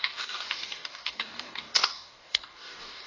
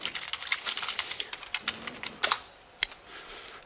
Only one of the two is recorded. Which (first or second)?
second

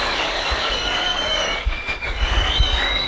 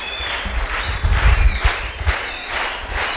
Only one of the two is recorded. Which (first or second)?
second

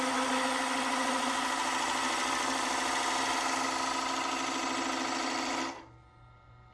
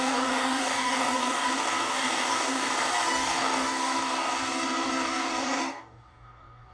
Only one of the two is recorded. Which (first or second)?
first